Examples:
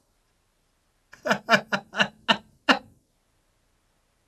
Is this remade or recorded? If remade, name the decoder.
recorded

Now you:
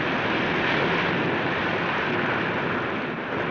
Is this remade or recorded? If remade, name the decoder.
recorded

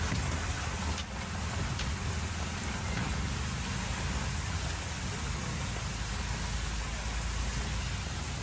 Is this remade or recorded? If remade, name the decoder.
recorded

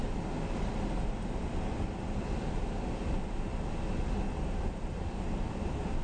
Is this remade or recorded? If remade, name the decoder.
recorded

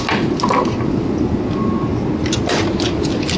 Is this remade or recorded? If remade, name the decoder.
recorded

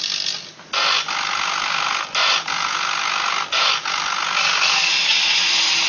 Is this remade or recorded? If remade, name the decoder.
recorded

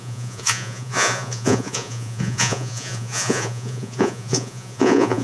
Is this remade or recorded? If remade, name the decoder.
remade, vocoder, Vocos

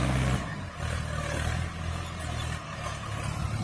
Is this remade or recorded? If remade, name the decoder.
recorded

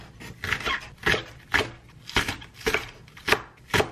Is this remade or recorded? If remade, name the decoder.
recorded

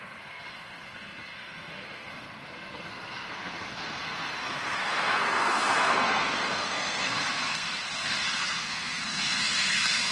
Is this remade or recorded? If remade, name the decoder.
remade, codec, SNAC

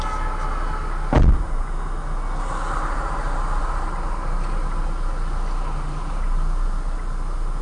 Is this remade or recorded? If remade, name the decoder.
recorded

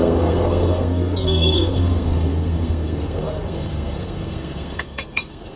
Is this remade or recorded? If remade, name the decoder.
remade, codec, SNAC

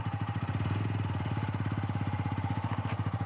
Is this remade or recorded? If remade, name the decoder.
remade, vocoder, BigVGAN v2